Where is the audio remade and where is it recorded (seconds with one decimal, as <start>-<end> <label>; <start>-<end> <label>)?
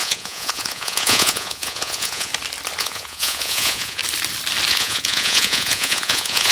0.0-2.3 remade; 2.3-2.8 recorded; 2.8-4.0 remade; 4.0-4.7 recorded; 4.7-6.5 remade